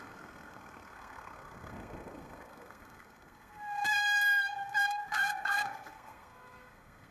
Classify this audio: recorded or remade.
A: remade